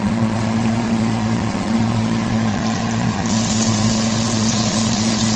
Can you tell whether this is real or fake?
fake